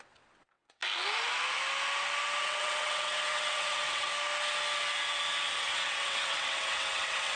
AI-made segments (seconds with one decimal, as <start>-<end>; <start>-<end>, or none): 0.0-0.8; 2.4-4.1; 5.6-7.4